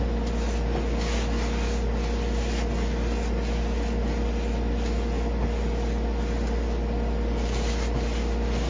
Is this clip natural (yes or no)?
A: yes